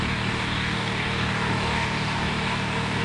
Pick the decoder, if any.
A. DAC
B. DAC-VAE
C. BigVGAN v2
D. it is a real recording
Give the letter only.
A